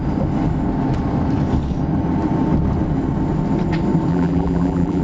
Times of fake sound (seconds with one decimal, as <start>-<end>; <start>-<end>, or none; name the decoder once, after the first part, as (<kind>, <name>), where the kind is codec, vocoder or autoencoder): 4.1-5.0 (vocoder, BigVGAN v2)